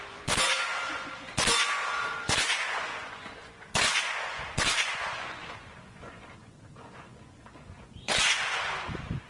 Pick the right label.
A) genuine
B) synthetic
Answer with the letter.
B